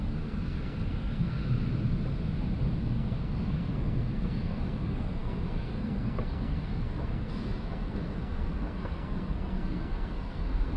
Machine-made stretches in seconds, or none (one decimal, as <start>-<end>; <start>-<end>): 0.0-1.4; 2.8-10.8